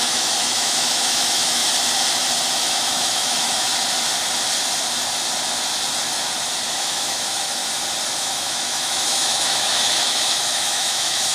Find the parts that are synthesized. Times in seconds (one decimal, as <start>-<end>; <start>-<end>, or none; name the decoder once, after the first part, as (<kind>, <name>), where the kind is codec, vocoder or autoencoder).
0.0-1.6 (autoencoder, DAC-VAE); 2.5-3.7; 6.7-7.6; 8.2-11.3